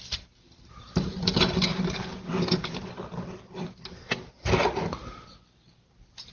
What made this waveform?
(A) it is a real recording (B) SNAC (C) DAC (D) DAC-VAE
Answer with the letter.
A